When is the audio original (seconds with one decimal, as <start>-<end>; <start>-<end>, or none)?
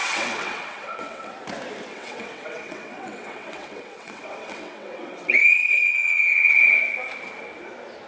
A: 1.3-1.9; 6.8-8.1